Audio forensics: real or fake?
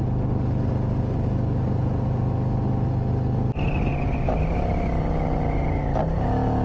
real